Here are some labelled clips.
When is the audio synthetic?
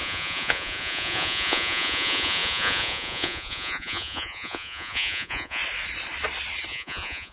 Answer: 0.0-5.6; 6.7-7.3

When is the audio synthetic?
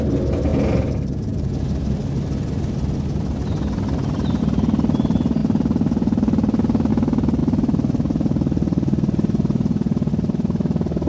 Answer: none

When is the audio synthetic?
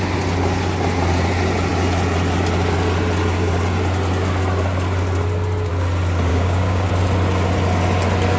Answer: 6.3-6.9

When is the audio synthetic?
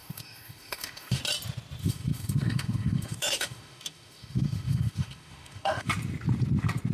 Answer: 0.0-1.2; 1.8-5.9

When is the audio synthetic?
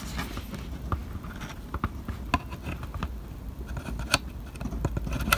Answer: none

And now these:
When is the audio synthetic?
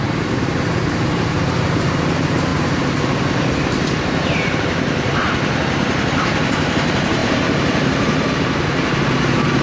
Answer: 0.0-2.5; 4.0-5.2; 6.4-9.6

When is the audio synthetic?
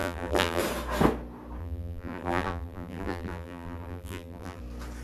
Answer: 0.0-0.6; 1.6-4.6